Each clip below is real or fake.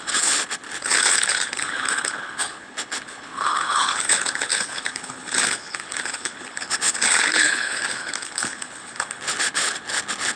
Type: fake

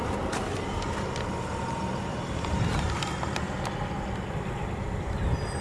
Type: real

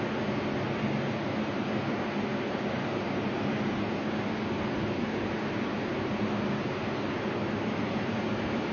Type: real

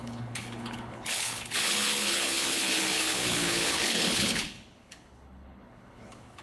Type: fake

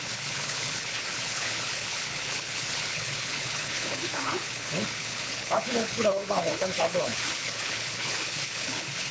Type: fake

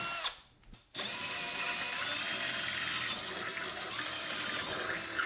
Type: real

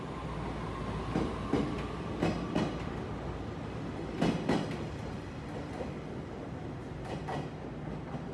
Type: real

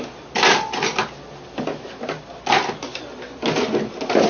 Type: real